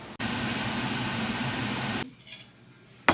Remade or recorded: recorded